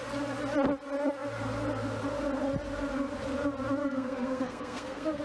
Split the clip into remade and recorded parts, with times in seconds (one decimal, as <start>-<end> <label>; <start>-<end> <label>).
0.0-3.8 recorded; 3.8-5.2 remade